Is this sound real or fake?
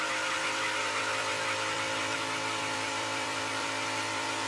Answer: fake